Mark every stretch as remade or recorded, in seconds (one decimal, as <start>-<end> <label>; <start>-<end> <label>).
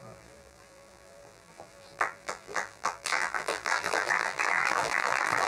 0.0-5.5 remade